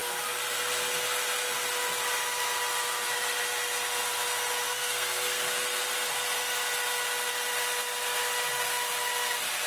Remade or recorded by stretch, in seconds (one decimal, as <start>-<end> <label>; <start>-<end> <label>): 0.0-4.7 recorded; 4.7-5.5 remade; 5.5-9.7 recorded

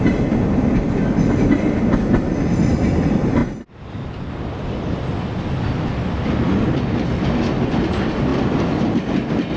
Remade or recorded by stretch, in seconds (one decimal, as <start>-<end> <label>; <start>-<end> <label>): 0.0-8.3 recorded; 8.3-9.1 remade; 9.1-9.6 recorded